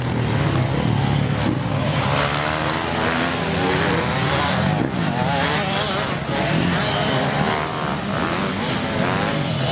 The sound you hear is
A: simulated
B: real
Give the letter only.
B